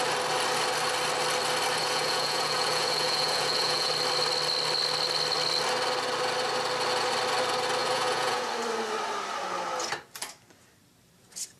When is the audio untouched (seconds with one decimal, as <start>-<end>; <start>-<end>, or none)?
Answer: 0.0-1.8; 3.9-7.8; 8.5-11.6